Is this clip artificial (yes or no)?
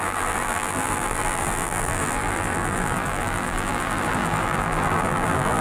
yes